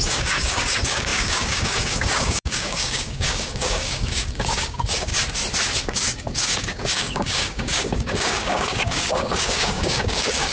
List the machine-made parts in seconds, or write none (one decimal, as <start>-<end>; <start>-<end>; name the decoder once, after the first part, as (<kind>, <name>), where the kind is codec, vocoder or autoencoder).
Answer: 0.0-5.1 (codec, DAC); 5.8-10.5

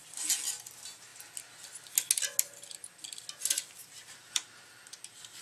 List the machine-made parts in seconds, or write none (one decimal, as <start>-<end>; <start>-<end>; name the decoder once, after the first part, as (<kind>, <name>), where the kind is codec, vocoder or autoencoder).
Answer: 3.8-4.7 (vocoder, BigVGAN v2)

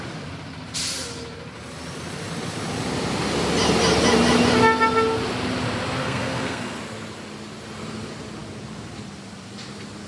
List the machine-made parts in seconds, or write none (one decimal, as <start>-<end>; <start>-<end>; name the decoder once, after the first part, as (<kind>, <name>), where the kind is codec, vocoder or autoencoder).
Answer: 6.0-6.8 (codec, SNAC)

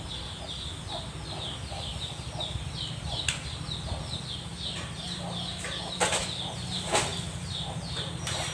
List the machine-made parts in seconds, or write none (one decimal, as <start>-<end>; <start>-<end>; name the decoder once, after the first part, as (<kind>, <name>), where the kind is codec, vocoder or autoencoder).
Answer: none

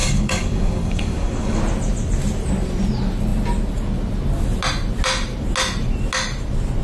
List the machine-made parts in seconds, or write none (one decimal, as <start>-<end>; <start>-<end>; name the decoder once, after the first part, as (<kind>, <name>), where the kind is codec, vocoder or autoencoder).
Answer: 0.0-1.6 (codec, DAC)